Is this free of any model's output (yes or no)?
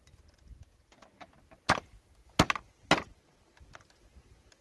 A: yes